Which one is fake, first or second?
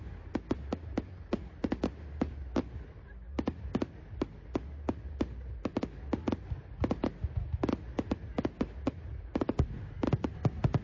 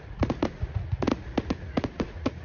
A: second